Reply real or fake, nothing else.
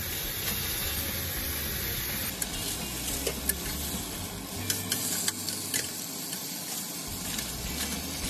real